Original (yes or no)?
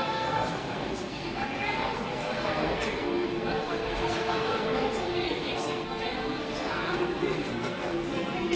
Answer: no